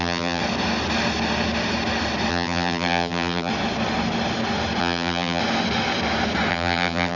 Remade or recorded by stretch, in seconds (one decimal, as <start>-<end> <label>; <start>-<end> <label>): 0.0-0.4 remade; 0.4-2.3 recorded; 2.3-3.5 remade; 3.5-4.8 recorded; 4.8-5.4 remade; 5.4-6.5 recorded; 6.5-7.2 remade